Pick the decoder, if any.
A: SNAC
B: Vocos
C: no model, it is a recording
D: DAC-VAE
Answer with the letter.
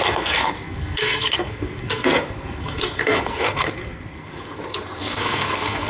A